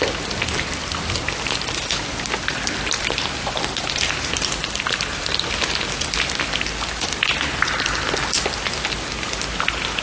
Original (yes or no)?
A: yes